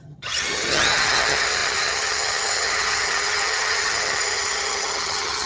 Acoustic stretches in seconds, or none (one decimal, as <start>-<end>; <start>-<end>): none